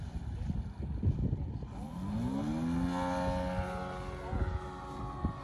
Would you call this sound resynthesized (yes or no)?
no